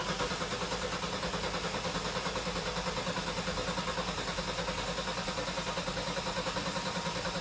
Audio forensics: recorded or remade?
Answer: recorded